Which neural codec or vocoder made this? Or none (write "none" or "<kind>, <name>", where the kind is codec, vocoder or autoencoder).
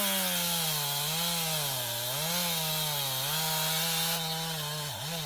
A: none